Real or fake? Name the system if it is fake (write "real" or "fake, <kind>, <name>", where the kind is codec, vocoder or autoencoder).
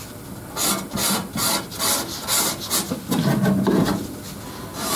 real